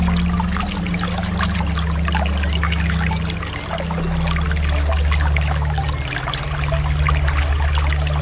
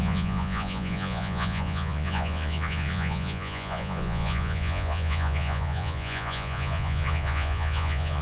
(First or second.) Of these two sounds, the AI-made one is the second